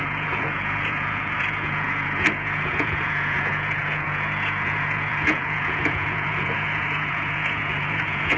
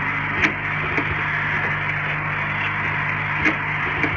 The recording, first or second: second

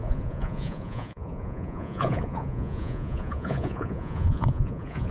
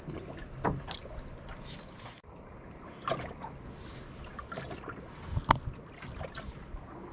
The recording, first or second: second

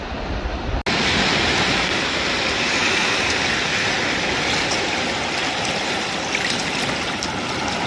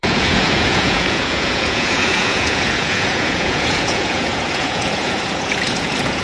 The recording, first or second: first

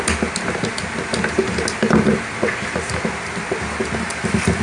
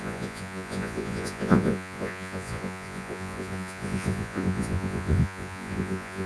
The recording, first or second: first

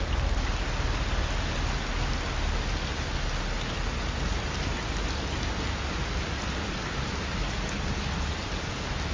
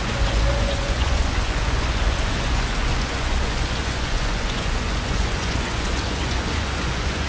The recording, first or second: first